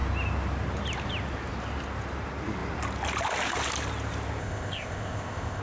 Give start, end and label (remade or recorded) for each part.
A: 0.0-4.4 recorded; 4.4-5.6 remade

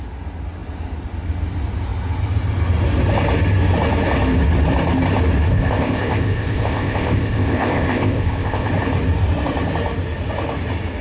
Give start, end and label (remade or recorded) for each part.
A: 0.0-5.5 recorded; 5.5-8.7 remade; 8.7-11.0 recorded

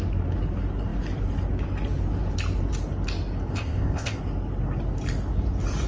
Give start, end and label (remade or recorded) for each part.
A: 0.0-3.5 recorded; 3.5-4.2 remade; 4.2-5.9 recorded

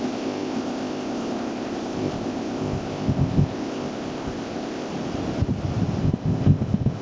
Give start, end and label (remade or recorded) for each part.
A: 0.0-4.9 remade; 4.9-6.0 recorded; 6.0-7.0 remade